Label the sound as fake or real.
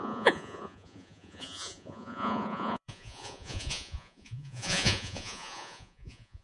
fake